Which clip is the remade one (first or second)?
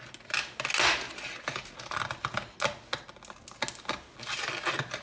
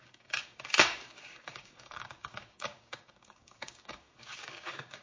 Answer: second